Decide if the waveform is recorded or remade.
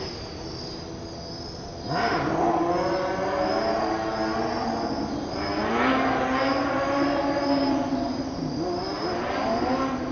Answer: recorded